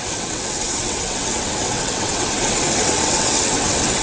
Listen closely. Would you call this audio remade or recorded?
remade